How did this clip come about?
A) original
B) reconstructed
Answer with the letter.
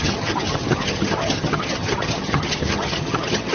B